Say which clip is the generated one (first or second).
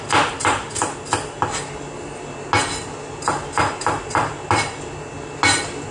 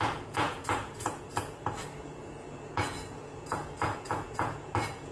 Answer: second